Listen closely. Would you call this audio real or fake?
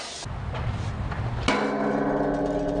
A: real